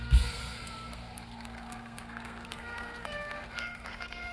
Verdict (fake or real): fake